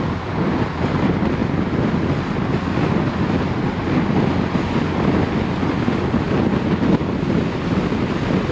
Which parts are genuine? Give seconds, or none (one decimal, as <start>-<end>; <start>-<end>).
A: 0.0-8.5